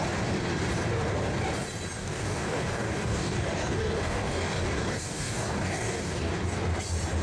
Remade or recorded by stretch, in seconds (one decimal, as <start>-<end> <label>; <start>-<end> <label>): 0.0-2.0 recorded; 2.0-6.3 remade; 6.3-7.2 recorded